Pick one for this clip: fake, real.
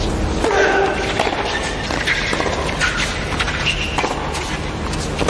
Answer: real